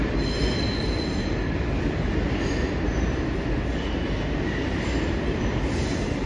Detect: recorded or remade recorded